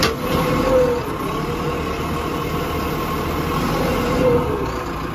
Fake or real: real